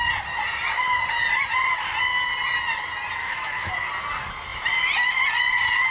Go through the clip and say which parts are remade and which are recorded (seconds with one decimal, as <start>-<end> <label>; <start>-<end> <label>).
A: 0.0-3.2 recorded; 3.2-3.7 remade; 3.7-5.9 recorded